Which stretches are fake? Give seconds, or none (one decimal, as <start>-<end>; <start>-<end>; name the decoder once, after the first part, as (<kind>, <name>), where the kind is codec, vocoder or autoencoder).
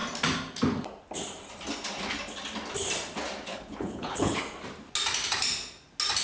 3.5-4.4 (codec, HILCodec)